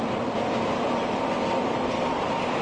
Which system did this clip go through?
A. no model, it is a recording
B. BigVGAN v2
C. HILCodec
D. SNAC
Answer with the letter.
A